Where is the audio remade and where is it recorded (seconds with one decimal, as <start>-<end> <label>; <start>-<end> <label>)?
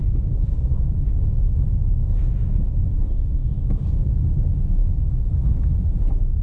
0.0-0.7 remade; 0.7-2.0 recorded; 2.0-4.0 remade; 4.0-4.8 recorded; 4.8-5.3 remade; 5.3-6.4 recorded